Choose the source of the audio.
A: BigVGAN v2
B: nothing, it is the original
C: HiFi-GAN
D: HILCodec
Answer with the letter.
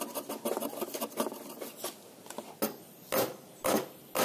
B